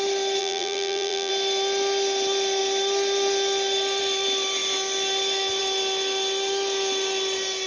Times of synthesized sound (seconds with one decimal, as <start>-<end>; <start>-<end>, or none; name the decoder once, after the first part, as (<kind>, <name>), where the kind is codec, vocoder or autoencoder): 0.4-1.3 (vocoder, BigVGAN v2)